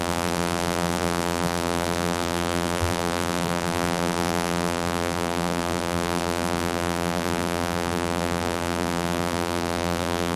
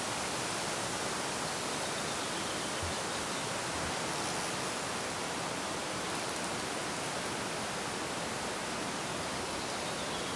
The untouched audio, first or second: second